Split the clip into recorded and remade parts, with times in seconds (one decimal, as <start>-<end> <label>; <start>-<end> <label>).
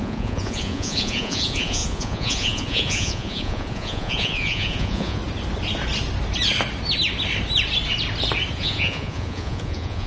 0.0-5.2 remade; 5.2-8.5 recorded; 8.5-10.1 remade